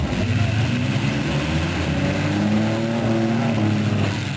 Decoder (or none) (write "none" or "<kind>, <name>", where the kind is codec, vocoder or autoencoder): none